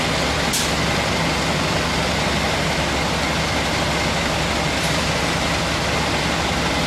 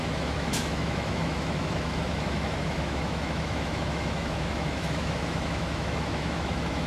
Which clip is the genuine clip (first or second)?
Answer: first